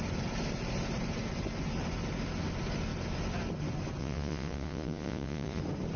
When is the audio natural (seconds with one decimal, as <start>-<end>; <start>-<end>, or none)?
0.0-4.0; 5.6-6.0

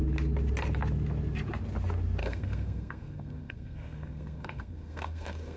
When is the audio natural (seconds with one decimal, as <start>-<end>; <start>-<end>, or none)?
0.0-2.2

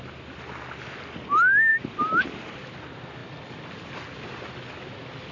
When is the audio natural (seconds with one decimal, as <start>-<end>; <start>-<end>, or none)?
0.0-5.3

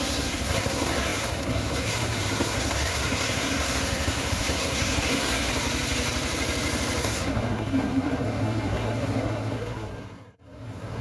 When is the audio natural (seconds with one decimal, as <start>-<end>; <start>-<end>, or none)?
5.5-7.0

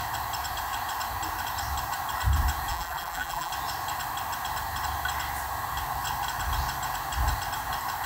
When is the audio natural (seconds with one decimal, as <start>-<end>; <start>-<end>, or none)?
0.0-2.7; 3.5-8.1

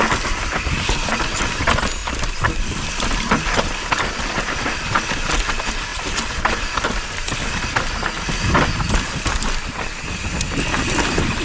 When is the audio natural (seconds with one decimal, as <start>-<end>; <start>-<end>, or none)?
0.0-2.0; 3.3-11.4

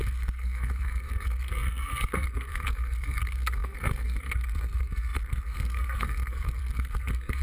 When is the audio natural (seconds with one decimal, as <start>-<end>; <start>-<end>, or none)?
none

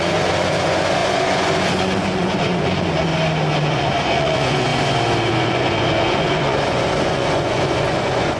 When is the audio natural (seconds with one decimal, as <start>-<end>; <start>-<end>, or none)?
3.1-3.7; 4.7-5.3